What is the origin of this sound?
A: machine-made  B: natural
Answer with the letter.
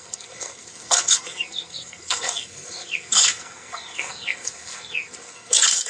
A